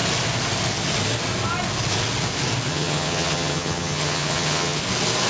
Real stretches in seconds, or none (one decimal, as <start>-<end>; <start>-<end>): 0.0-2.7; 4.8-5.3